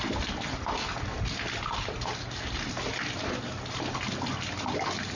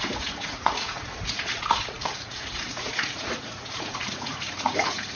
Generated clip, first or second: second